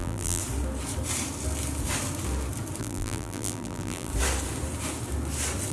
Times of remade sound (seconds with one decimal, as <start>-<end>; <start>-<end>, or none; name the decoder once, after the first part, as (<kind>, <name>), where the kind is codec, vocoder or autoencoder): 0.0-0.4 (vocoder, BigVGAN v2); 2.8-4.1